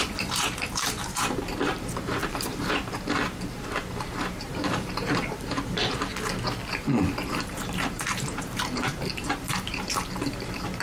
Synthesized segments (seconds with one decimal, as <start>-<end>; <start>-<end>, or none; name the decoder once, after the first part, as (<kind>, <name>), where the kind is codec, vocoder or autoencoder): 0.0-6.1 (vocoder, BigVGAN v2); 7.3-10.8